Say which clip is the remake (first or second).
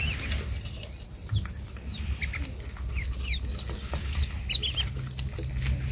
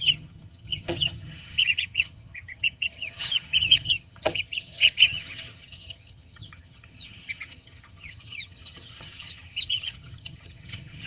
second